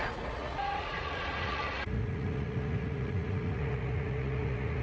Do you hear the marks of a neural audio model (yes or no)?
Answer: yes